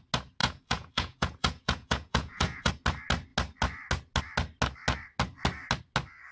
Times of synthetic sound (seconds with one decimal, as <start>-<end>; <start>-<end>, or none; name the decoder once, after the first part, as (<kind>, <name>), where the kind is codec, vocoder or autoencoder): 0.4-2.7 (vocoder, Vocos)